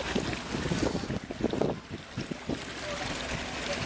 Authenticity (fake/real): real